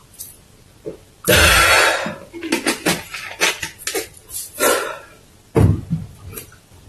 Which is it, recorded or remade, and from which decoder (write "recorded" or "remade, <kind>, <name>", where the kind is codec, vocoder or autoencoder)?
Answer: recorded